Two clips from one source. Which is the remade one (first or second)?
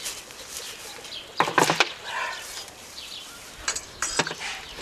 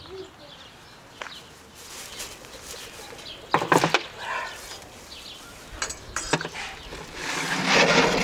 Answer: first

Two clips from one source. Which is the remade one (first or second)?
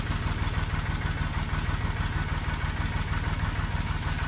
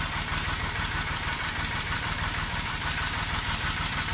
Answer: second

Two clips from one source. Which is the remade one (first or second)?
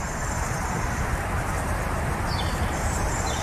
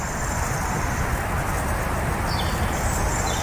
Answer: first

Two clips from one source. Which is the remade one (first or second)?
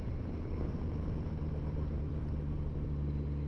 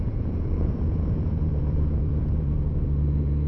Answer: second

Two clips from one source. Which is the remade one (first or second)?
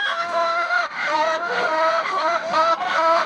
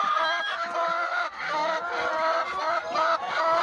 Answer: first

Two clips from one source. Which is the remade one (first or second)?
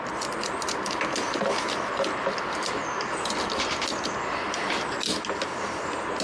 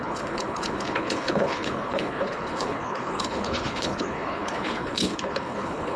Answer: second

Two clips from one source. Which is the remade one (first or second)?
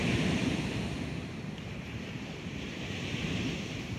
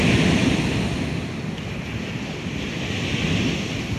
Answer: first